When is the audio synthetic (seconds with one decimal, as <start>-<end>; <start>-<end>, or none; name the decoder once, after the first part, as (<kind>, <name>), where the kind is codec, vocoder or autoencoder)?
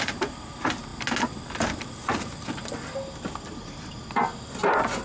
none